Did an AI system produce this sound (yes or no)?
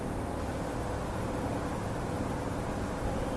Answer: no